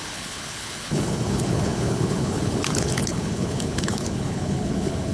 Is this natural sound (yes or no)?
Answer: no